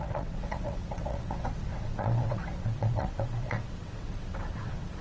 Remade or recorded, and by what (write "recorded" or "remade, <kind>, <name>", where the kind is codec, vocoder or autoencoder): remade, vocoder, WaveNeXt